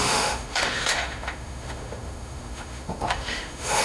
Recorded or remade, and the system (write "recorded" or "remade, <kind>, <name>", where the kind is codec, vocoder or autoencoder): remade, autoencoder, DAC-VAE